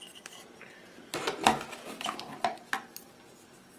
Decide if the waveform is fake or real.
real